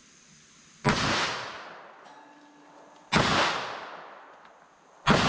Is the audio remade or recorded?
recorded